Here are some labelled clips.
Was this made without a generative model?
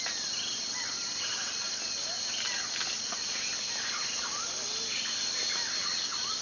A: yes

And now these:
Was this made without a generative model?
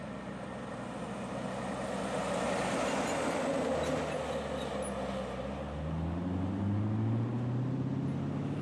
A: yes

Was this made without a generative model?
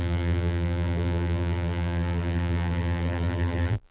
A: no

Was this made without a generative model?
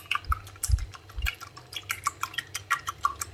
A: yes